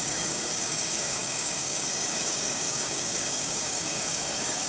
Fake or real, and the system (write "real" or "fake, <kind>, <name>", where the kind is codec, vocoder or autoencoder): fake, codec, DAC